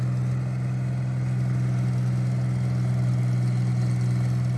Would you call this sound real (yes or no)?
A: yes